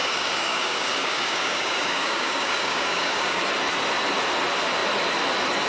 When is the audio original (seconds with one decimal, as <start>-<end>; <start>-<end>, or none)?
3.4-5.7